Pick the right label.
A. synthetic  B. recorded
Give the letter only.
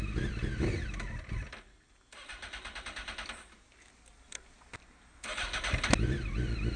B